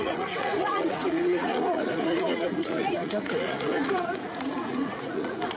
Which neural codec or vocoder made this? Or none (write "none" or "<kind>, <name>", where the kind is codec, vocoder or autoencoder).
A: vocoder, Vocos